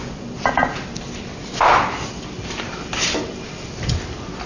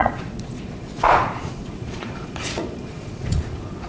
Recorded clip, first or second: first